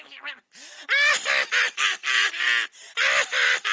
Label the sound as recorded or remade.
recorded